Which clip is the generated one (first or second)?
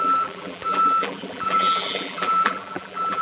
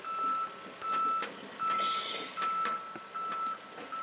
first